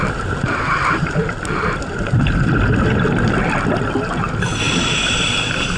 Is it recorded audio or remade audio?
recorded